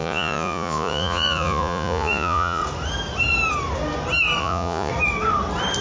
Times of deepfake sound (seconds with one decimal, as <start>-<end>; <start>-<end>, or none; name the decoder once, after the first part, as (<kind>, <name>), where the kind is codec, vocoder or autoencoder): 0.0-2.6 (vocoder, Vocos); 4.4-4.9